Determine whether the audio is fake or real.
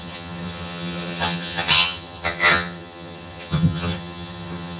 fake